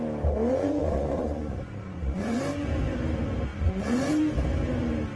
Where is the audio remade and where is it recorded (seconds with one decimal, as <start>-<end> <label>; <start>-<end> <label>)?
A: 0.0-0.5 recorded; 0.5-2.4 remade; 2.4-3.5 recorded; 3.5-4.1 remade; 4.1-5.2 recorded